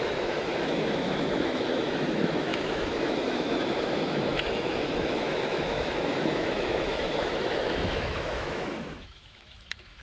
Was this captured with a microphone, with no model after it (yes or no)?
no